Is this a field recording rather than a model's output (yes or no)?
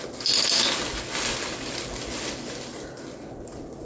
yes